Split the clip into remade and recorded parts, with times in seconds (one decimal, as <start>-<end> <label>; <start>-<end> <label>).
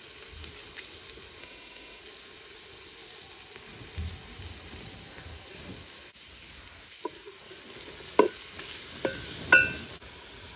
0.0-1.4 recorded; 1.4-2.0 remade; 2.0-10.6 recorded